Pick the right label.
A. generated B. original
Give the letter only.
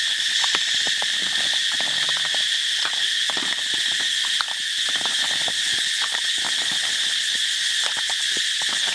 B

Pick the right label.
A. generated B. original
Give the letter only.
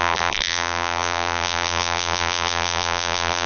A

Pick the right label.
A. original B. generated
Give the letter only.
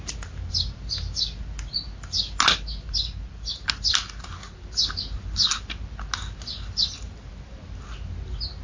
A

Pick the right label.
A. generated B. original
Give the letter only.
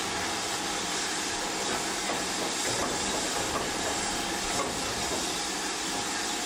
B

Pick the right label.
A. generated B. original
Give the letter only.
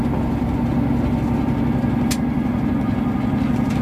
B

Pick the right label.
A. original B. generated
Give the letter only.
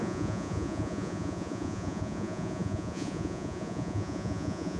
B